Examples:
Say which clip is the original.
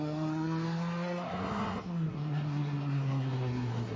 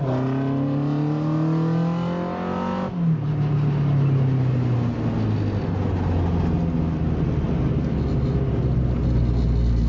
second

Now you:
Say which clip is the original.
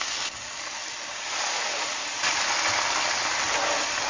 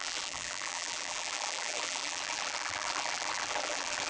first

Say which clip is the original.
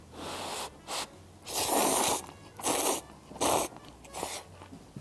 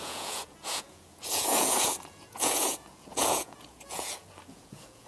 first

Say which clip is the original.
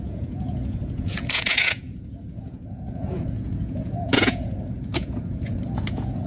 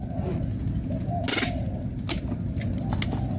second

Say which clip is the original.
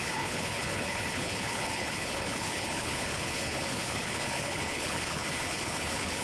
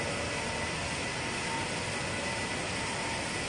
second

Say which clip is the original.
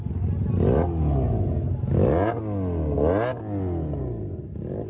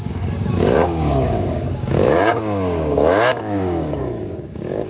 first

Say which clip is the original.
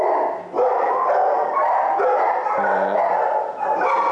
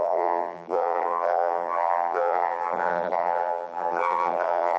first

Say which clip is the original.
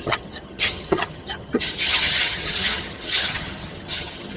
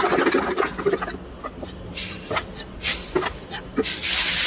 second